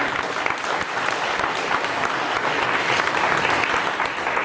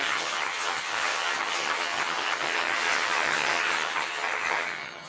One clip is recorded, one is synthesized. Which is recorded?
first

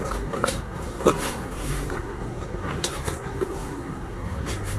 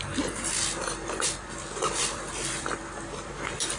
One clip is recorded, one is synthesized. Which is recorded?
second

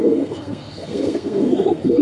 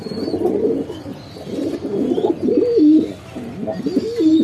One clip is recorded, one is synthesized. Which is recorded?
second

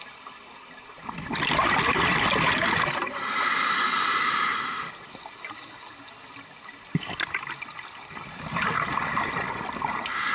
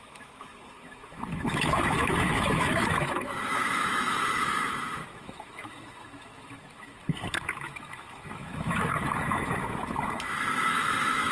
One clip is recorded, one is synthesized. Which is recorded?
first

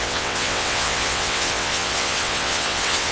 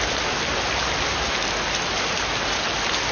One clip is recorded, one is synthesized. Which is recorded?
second